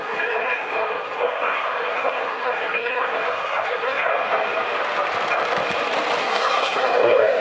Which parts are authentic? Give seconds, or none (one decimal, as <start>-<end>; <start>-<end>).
4.1-6.2